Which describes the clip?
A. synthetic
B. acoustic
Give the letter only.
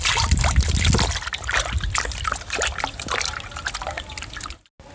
B